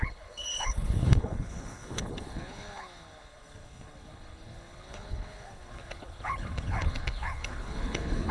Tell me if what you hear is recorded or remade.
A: remade